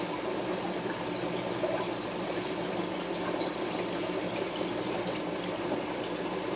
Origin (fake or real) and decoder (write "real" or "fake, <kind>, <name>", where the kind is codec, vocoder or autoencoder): real